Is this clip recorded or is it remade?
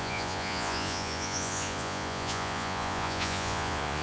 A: remade